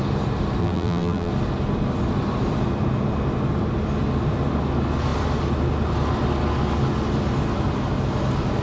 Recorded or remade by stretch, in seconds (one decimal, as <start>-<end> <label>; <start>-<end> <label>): 0.0-0.6 recorded; 0.6-1.3 remade; 1.3-8.6 recorded

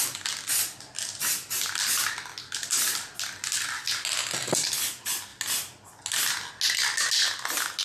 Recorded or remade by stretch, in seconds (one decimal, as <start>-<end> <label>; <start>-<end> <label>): 0.0-7.8 recorded